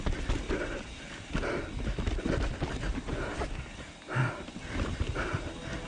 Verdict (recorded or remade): recorded